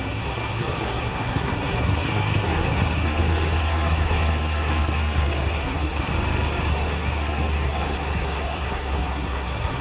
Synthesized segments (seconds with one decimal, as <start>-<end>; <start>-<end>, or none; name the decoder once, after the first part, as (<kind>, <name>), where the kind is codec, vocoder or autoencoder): 0.0-6.1 (codec, SNAC); 6.7-9.8